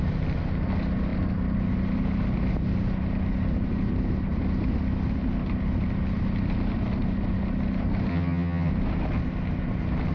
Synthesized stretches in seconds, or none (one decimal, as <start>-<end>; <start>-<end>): 8.1-8.7